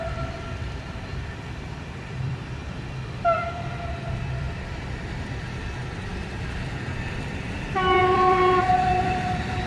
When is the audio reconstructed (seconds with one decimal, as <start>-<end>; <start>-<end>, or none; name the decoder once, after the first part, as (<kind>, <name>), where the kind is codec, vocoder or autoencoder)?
0.0-2.6 (vocoder, BigVGAN v2); 3.9-6.1; 7.3-9.7